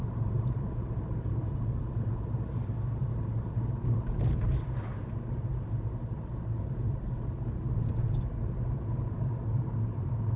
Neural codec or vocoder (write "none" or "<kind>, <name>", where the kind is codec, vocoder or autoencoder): none